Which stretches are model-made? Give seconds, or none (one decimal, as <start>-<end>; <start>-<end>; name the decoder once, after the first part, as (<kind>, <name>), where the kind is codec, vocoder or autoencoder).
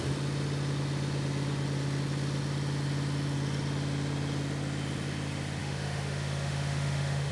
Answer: 5.6-7.3 (autoencoder, DAC-VAE)